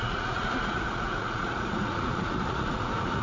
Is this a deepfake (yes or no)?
yes